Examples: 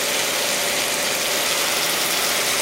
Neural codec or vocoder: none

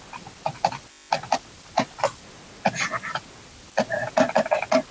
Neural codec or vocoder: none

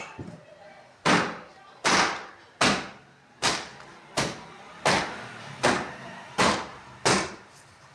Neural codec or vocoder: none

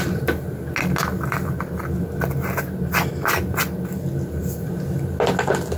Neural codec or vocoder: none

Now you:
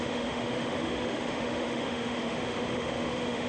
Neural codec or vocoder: autoencoder, DAC-VAE